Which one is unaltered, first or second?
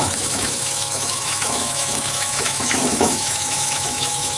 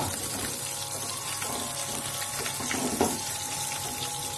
second